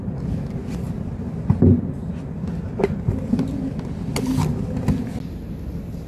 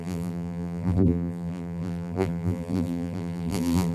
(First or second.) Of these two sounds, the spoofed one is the second